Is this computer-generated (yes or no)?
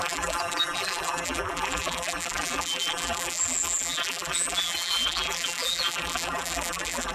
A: yes